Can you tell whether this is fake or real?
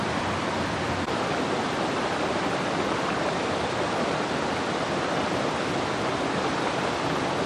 fake